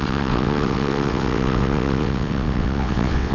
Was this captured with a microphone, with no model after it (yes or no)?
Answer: no